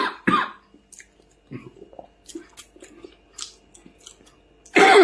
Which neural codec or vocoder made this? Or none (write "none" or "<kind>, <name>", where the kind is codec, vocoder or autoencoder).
none